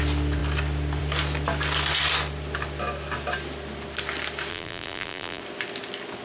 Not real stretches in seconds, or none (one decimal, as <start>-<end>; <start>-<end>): 4.5-5.4